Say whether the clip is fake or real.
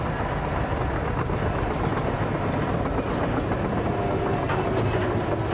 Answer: real